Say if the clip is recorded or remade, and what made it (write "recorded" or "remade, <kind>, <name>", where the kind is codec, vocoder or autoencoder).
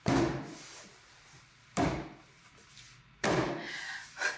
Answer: recorded